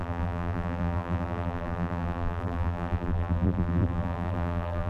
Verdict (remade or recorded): remade